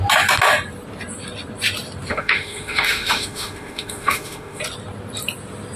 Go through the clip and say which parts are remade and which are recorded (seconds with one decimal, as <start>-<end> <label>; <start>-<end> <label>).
0.0-2.1 recorded; 2.1-4.6 remade; 4.6-5.8 recorded